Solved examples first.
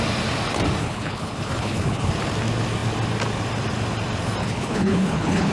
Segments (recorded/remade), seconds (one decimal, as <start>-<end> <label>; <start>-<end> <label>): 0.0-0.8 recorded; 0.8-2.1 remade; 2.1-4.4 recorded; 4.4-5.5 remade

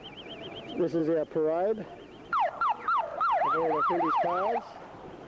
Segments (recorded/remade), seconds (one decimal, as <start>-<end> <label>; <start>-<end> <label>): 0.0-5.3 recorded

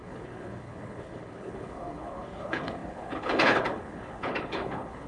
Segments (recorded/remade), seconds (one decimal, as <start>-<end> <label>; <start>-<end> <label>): 0.0-5.1 remade

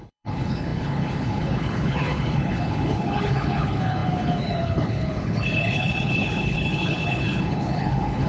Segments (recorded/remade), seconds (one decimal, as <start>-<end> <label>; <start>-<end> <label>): 0.0-8.3 remade

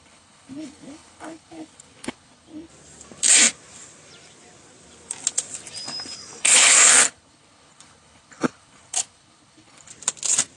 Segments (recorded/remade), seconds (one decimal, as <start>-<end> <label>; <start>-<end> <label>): 0.0-2.7 remade; 2.7-6.4 recorded; 6.4-9.9 remade; 9.9-10.6 recorded

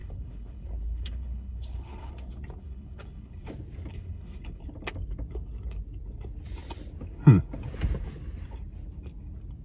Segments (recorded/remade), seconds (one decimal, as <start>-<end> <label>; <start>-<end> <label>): 0.0-2.1 remade; 2.1-2.6 recorded; 2.6-3.5 remade; 3.5-3.9 recorded; 3.9-4.6 remade; 4.6-9.6 recorded